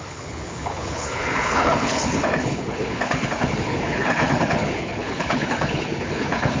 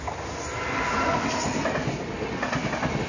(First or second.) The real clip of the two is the second